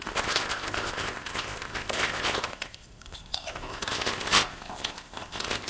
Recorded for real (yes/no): no